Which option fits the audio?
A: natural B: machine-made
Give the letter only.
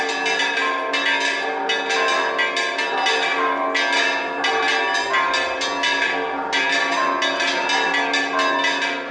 A